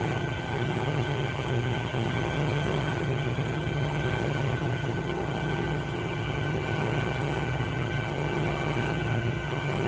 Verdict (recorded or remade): remade